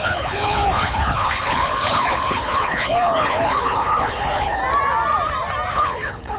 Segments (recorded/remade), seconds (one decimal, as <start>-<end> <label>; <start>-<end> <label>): 0.0-4.6 remade; 4.6-5.7 recorded; 5.7-6.4 remade